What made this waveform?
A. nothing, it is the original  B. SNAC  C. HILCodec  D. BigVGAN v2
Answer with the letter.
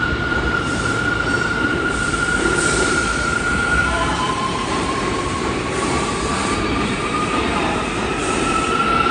D